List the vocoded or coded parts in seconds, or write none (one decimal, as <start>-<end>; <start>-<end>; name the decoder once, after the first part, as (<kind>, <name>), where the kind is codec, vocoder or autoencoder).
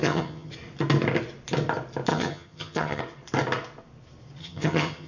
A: 0.0-0.5 (vocoder, HiFi-GAN); 2.1-3.0; 4.4-5.1